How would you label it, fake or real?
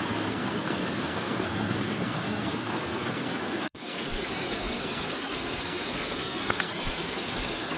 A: fake